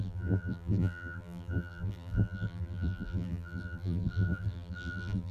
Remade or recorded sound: remade